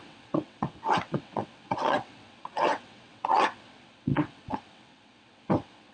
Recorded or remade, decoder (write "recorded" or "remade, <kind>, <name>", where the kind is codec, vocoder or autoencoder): remade, vocoder, WaveNeXt